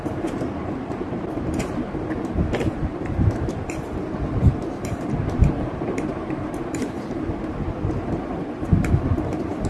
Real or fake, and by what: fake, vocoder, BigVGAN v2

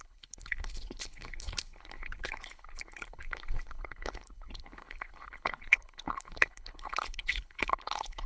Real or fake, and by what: fake, codec, HILCodec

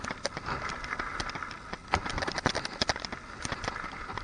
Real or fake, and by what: real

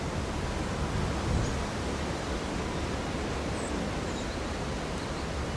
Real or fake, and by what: real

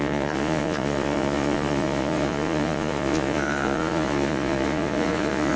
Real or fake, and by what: fake, vocoder, Vocos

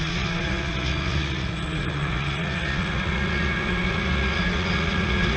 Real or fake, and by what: fake, vocoder, Vocos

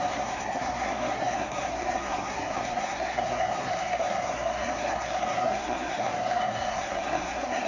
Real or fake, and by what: fake, codec, SNAC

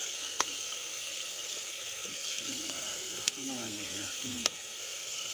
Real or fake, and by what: fake, codec, SNAC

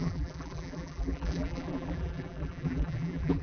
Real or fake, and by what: fake, vocoder, BigVGAN v2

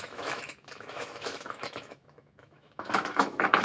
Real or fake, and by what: fake, autoencoder, DAC-VAE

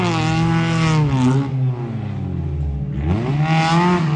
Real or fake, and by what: real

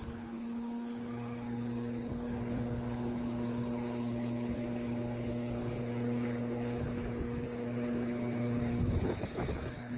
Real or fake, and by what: fake, codec, HILCodec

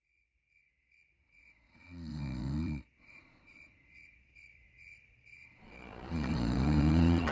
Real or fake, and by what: fake, vocoder, Vocos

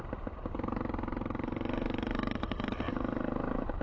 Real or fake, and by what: fake, vocoder, BigVGAN v2